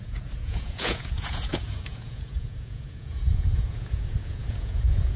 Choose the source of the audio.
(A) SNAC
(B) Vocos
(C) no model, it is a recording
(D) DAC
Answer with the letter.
B